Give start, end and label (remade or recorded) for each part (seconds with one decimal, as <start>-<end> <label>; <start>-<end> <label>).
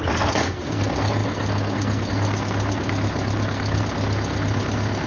0.0-5.1 remade